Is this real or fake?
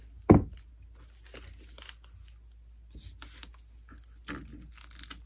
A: real